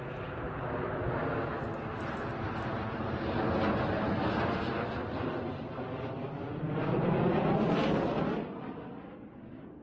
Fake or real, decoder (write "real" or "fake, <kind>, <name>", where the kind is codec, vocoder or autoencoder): real